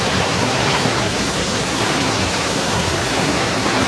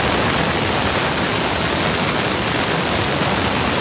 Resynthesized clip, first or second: first